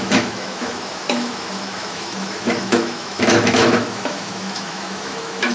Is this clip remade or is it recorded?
remade